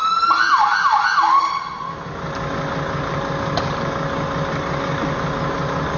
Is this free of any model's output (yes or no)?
yes